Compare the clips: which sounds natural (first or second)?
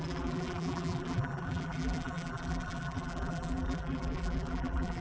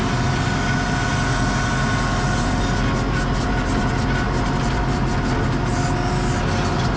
second